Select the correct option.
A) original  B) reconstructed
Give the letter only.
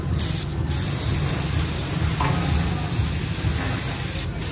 A